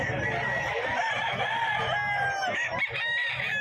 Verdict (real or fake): real